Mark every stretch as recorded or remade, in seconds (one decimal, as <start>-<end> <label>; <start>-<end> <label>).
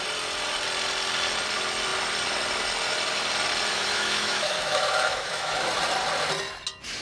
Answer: 0.0-3.7 recorded; 3.7-5.7 remade; 5.7-7.0 recorded